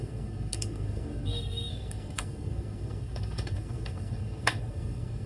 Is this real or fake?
fake